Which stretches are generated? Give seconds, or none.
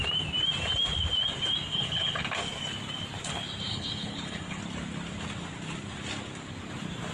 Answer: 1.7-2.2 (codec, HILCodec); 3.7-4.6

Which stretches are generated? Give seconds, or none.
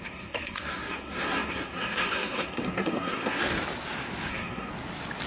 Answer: 0.0-3.4 (codec, SNAC); 4.3-4.7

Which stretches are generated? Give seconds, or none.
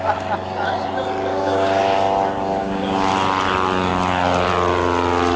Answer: 1.3-1.8 (codec, DAC); 2.6-3.1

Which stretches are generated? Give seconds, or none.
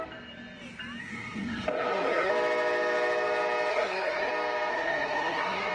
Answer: 1.0-2.3 (codec, SNAC); 3.7-4.3; 4.7-5.7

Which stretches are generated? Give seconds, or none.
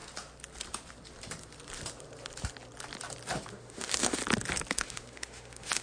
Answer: 3.5-4.2 (autoencoder, DAC-VAE); 4.7-5.8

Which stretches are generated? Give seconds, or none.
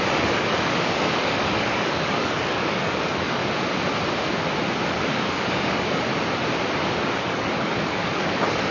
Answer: 0.0-3.4 (codec, DAC); 4.9-6.1; 6.8-8.7